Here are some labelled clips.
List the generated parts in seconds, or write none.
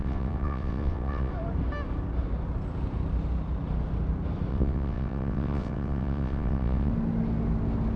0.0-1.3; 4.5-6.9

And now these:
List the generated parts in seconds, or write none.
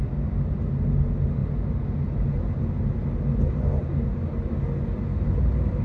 none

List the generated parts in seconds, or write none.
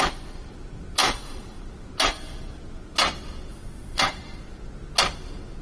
3.5-4.4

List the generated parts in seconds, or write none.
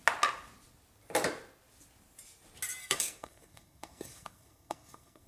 2.8-5.3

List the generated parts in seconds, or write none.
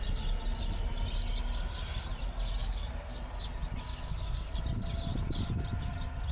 2.6-3.2; 3.9-4.6